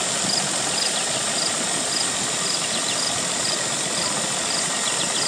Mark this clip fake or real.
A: real